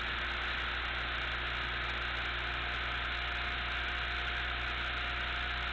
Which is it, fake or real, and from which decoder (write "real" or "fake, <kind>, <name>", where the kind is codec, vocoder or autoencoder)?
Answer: real